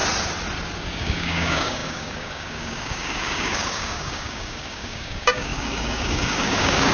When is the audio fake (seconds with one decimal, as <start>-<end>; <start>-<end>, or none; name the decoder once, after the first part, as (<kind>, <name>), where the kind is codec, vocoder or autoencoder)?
0.9-6.9 (codec, DAC)